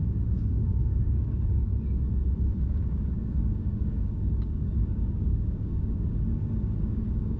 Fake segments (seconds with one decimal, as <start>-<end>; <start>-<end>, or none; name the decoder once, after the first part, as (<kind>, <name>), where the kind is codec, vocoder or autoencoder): 0.0-1.7 (codec, DAC); 2.8-7.4